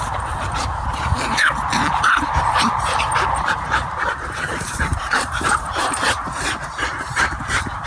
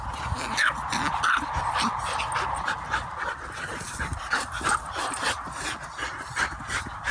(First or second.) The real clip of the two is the second